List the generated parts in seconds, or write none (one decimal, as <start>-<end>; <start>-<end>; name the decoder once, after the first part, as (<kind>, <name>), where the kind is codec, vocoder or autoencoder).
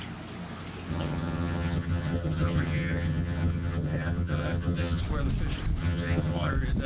0.9-5.0 (vocoder, HiFi-GAN); 5.8-6.5